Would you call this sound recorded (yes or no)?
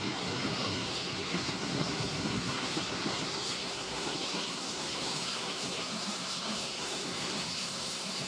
no